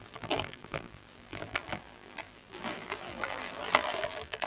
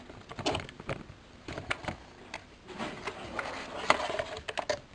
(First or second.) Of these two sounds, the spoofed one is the first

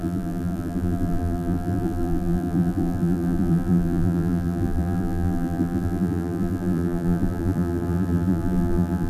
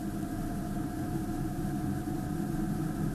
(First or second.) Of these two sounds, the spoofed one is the first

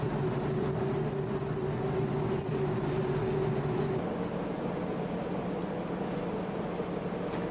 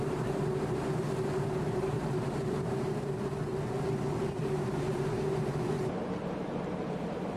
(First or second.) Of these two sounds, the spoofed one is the second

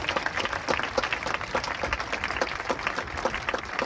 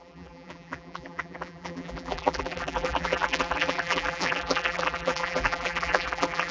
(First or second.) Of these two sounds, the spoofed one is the second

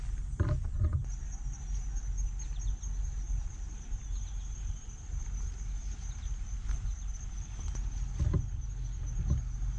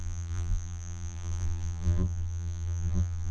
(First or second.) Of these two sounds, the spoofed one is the second